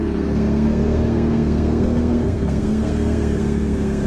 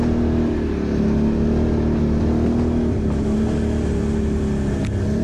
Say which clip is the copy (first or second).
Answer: first